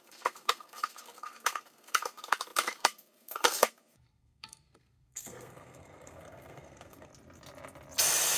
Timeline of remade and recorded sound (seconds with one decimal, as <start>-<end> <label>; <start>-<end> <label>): 0.0-7.1 remade; 7.1-8.4 recorded